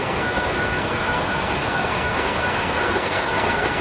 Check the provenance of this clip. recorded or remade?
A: remade